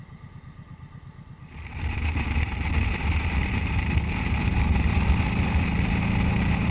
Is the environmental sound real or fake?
real